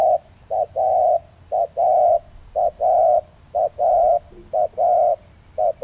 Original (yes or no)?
yes